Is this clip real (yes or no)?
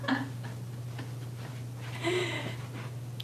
yes